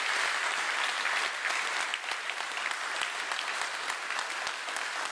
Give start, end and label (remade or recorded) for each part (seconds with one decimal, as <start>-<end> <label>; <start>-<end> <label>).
0.0-5.1 recorded